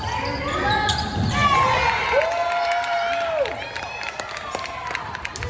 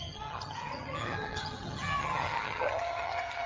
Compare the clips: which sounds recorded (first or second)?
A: first